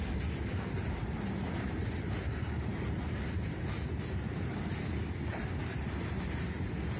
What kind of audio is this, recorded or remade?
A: remade